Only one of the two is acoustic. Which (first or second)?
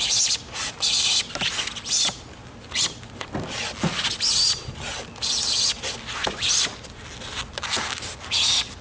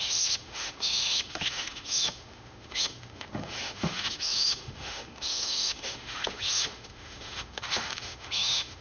first